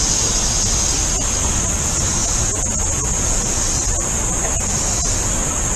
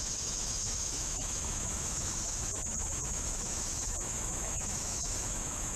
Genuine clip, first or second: first